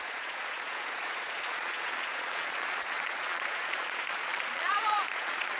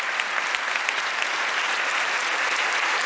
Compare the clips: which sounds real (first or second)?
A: second